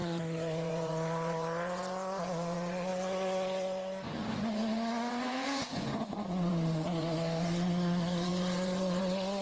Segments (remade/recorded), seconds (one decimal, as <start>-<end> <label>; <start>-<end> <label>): 0.0-9.4 remade